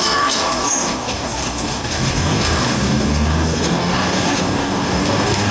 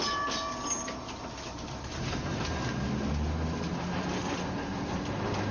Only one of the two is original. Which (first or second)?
second